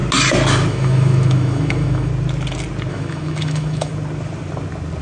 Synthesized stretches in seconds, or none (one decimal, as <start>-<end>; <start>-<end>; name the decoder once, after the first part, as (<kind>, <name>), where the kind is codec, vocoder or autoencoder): 0.7-2.1 (autoencoder, DAC-VAE); 2.9-3.9